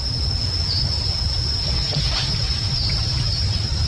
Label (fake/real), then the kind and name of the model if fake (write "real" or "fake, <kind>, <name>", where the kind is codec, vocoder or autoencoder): real